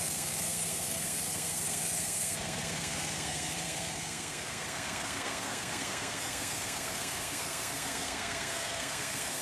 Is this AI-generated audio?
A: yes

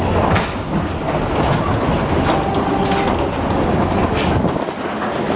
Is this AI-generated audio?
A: no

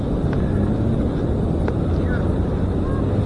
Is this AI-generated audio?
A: no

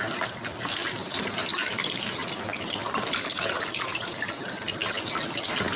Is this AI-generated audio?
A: no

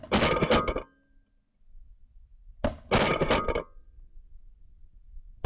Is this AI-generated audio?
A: no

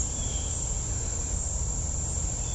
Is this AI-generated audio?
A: no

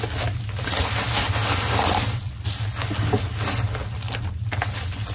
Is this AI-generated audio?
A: no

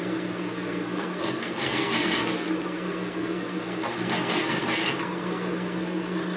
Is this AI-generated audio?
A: yes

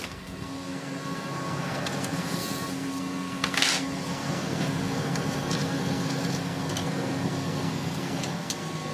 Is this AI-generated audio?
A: yes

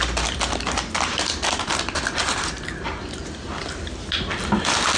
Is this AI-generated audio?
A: no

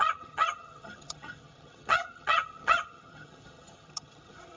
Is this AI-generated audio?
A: yes